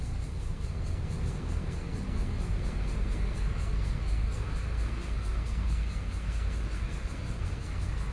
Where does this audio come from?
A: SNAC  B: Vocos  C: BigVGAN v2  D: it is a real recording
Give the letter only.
A